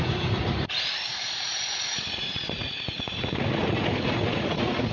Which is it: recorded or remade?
remade